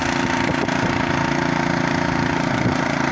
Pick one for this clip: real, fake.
real